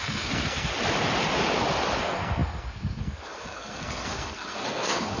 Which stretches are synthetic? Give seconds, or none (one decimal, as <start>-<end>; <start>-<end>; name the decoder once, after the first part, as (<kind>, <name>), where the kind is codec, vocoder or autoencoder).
0.0-0.7 (codec, SNAC); 2.0-5.2